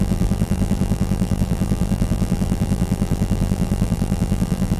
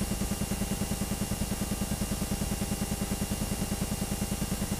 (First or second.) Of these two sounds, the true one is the second